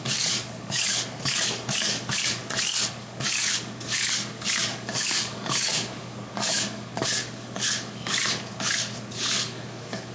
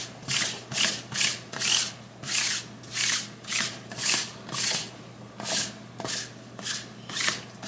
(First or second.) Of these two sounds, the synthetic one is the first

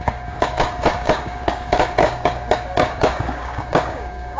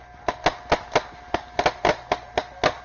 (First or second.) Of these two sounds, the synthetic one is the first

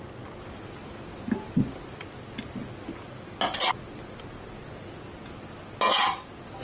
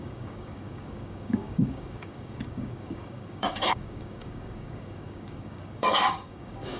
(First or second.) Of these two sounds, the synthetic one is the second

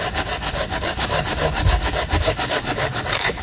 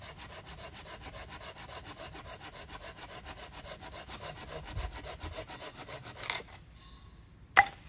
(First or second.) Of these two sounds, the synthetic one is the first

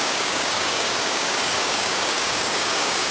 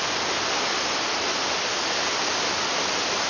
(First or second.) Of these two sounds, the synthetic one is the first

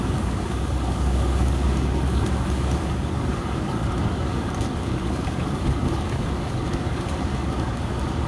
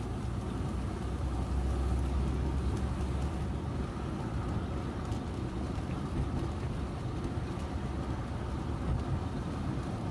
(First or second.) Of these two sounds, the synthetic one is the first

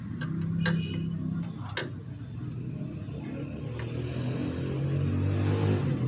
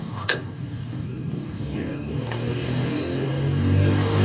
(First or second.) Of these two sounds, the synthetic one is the second